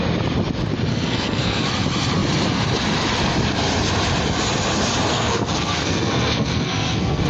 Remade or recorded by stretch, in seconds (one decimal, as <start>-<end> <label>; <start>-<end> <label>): 0.0-0.9 recorded; 0.9-1.7 remade; 1.7-5.1 recorded; 5.1-7.3 remade